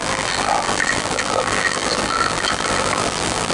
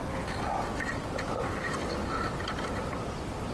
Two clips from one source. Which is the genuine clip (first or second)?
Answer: second